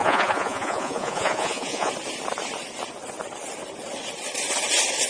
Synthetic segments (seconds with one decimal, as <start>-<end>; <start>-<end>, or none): 0.0-1.9